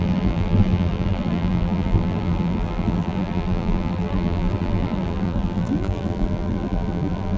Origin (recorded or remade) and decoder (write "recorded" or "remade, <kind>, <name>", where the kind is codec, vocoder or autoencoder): remade, vocoder, BigVGAN v2